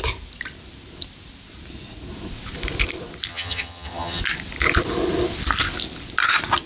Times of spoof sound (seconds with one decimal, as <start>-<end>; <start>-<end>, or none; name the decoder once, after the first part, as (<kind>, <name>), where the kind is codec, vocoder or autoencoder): 3.3-4.2 (vocoder, HiFi-GAN)